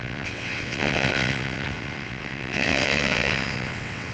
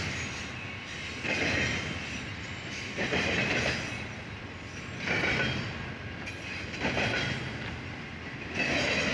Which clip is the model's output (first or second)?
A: first